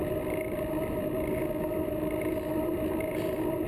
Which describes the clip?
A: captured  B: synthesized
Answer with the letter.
A